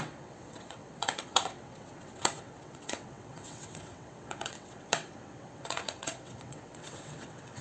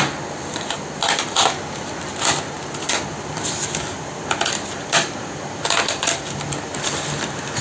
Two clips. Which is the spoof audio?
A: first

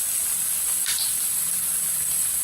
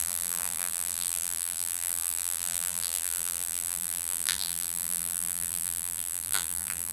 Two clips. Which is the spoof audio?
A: second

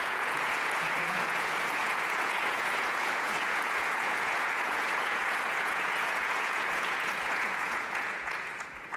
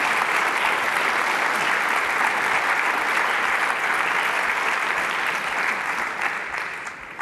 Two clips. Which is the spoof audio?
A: first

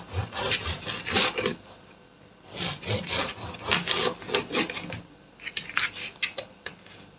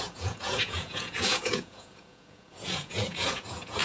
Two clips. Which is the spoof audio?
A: second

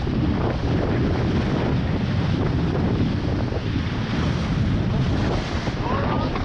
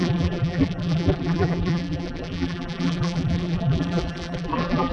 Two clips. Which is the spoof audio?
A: second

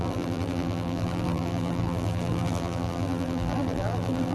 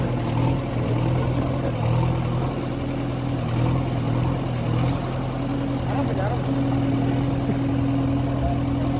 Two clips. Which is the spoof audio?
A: first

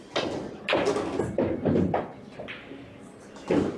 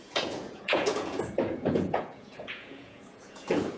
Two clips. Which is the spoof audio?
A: second